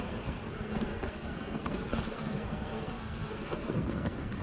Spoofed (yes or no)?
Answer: yes